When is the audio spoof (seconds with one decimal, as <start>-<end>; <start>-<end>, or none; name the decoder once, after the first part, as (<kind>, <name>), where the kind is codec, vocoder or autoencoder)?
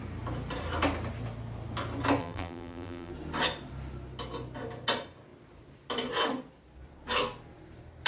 2.2-3.1 (vocoder, BigVGAN v2)